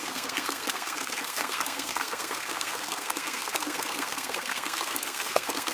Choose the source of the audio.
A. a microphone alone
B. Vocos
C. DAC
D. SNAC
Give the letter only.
D